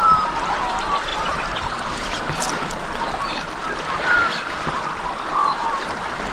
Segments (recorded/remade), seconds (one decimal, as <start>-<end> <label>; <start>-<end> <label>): 0.0-6.3 recorded